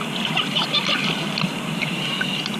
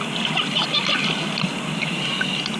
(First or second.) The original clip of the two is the second